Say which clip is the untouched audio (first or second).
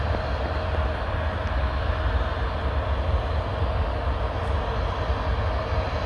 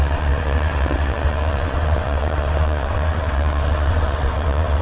first